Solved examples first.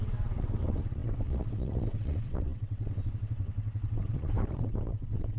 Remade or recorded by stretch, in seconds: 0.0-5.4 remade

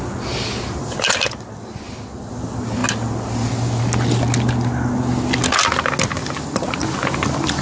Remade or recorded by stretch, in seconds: 0.0-7.6 recorded

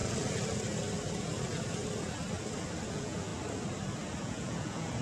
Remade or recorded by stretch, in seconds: 0.0-2.9 recorded; 2.9-3.3 remade; 3.3-4.2 recorded; 4.2-5.0 remade

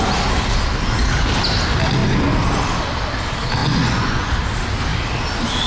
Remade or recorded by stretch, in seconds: 0.0-3.6 recorded; 3.6-4.3 remade; 4.3-5.7 recorded

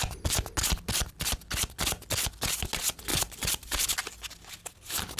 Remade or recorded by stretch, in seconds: 0.0-3.1 recorded; 3.1-3.9 remade; 3.9-5.2 recorded

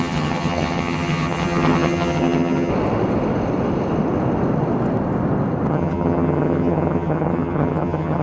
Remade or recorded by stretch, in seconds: 0.0-2.7 remade; 2.7-5.7 recorded; 5.7-8.2 remade

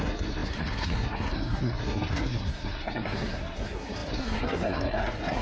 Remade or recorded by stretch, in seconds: 0.0-5.4 remade

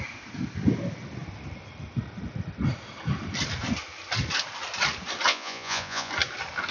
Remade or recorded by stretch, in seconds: 0.0-5.3 recorded; 5.3-6.1 remade; 6.1-6.7 recorded